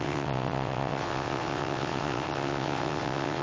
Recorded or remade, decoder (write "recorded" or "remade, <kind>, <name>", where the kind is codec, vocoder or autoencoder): remade, vocoder, WaveNeXt